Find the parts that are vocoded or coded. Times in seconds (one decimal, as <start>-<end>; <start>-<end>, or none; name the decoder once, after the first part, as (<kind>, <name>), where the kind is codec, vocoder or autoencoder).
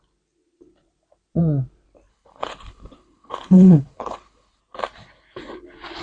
2.1-4.6 (codec, HILCodec)